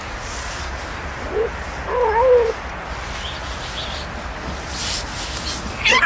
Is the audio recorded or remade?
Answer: recorded